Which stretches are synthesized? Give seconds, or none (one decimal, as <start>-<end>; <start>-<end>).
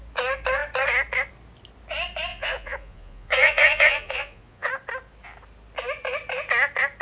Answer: 2.3-4.7